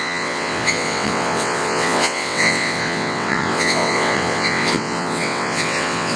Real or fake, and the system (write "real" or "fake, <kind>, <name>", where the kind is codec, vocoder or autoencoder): fake, vocoder, WaveNeXt